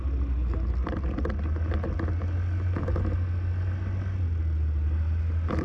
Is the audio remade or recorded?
recorded